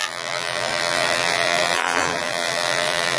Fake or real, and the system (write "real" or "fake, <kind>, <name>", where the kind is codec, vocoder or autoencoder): fake, vocoder, BigVGAN v2